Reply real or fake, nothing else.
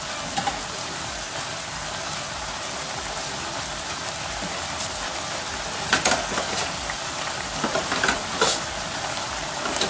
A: real